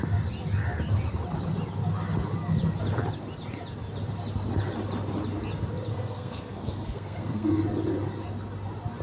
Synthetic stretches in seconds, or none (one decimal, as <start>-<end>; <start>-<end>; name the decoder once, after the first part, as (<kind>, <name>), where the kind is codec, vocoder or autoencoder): 5.9-7.5 (codec, SNAC)